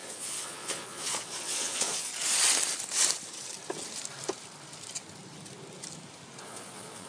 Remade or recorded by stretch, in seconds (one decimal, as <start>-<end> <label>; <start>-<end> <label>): 0.0-2.1 remade; 2.1-6.4 recorded; 6.4-7.1 remade